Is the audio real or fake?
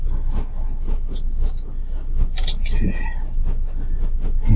real